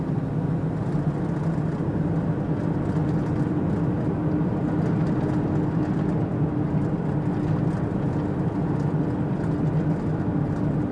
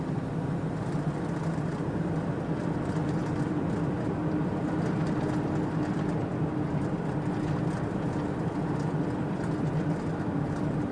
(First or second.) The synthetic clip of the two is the second